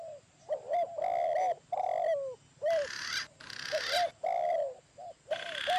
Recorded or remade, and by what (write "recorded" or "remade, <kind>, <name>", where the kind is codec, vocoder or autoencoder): recorded